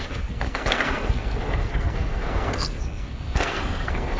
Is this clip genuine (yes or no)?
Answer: no